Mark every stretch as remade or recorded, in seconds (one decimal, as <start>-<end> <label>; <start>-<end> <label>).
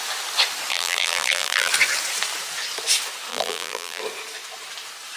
0.0-0.7 recorded; 0.7-1.7 remade; 1.7-3.3 recorded; 3.3-4.0 remade; 4.0-5.2 recorded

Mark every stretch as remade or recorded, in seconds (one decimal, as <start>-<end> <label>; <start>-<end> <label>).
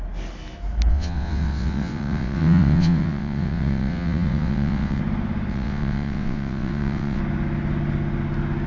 0.0-0.9 recorded; 0.9-5.0 remade; 5.0-5.5 recorded; 5.5-7.2 remade; 7.2-8.7 recorded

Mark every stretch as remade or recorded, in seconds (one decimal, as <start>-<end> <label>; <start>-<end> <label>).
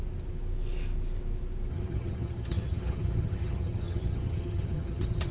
0.0-1.7 recorded; 1.7-5.3 remade